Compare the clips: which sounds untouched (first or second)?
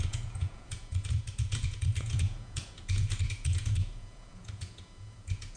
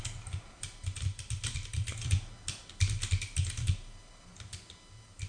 second